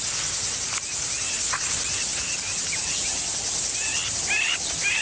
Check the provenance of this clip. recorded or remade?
recorded